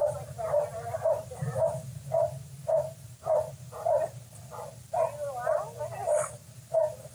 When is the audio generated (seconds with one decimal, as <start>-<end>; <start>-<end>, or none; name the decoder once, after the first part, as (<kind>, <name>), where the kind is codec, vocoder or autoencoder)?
0.0-4.3 (vocoder, BigVGAN v2)